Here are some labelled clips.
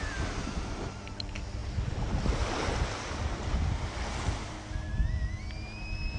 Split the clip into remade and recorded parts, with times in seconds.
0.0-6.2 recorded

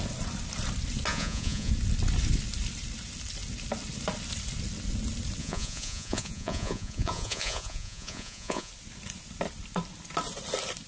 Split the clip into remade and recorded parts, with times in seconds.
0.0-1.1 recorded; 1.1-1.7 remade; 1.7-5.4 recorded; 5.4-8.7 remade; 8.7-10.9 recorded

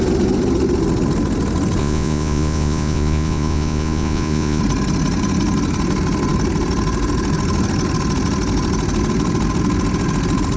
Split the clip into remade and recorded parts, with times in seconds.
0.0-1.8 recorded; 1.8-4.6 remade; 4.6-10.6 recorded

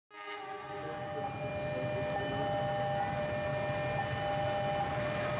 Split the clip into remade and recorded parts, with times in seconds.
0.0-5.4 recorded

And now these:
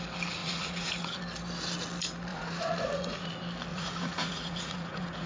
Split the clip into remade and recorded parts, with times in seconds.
0.0-0.4 recorded; 0.4-1.2 remade; 1.2-2.3 recorded; 2.3-3.3 remade; 3.3-3.7 recorded; 3.7-5.3 remade

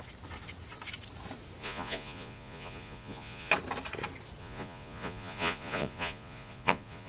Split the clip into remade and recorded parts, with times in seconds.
0.0-1.6 recorded; 1.6-3.5 remade; 3.5-4.4 recorded; 4.4-7.1 remade

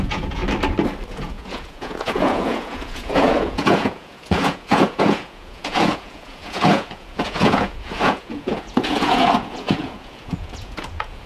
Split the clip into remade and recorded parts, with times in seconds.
0.0-0.4 remade; 0.4-1.1 recorded; 1.1-11.3 remade

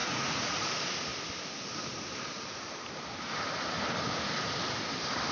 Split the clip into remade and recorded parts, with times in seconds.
0.0-0.6 remade; 0.6-5.3 recorded